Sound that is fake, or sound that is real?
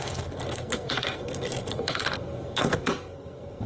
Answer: fake